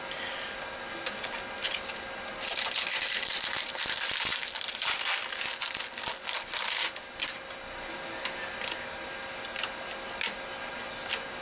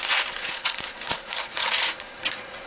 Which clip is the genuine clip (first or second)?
first